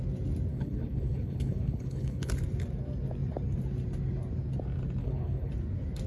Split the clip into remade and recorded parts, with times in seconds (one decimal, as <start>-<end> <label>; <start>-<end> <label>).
0.0-0.5 recorded; 0.5-2.3 remade; 2.3-5.0 recorded; 5.0-5.5 remade; 5.5-6.1 recorded